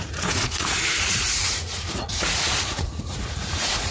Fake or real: fake